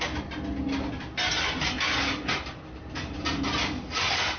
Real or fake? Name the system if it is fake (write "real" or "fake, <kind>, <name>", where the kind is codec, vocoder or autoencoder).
real